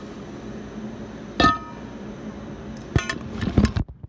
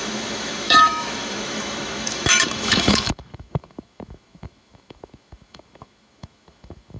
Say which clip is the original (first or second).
first